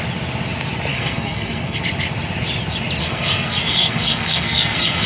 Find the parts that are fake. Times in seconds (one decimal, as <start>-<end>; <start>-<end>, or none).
0.9-1.8; 3.0-5.1